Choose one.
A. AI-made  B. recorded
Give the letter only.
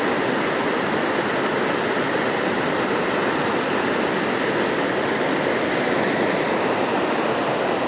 B